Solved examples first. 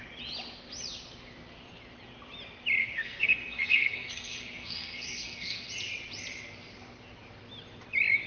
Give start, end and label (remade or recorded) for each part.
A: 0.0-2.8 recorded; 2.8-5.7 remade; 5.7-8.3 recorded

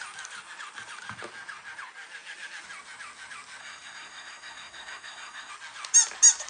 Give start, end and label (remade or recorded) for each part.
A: 0.0-3.6 recorded; 3.6-5.5 remade; 5.5-6.5 recorded